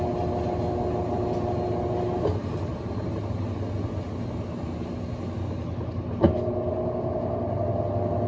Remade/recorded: recorded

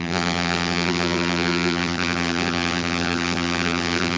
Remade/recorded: remade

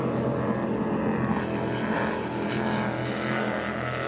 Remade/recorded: recorded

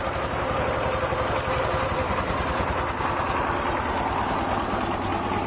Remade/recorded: remade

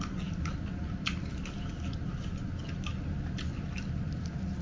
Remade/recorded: recorded